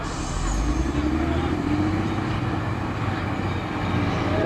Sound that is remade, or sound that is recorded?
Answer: recorded